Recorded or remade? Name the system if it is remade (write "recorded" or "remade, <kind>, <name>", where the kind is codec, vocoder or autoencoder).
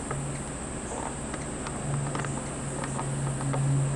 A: recorded